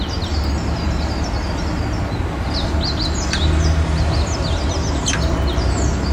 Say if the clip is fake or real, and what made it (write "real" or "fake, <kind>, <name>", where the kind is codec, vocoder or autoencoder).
real